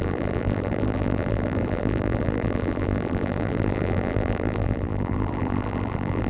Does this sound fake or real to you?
fake